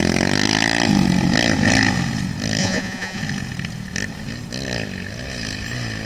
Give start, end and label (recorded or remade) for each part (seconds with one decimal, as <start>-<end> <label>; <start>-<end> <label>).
0.0-2.6 recorded; 2.6-3.2 remade; 3.2-6.1 recorded